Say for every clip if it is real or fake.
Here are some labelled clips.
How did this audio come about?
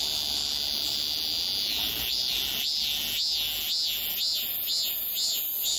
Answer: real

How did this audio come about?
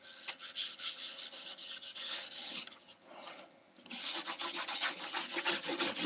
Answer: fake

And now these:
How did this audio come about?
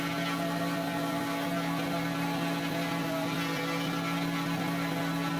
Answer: real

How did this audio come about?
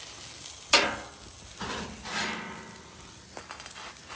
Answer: real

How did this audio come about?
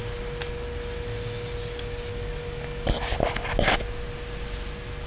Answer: real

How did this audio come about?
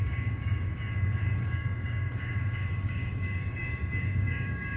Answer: fake